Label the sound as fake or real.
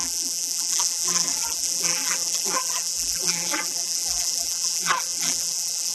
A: fake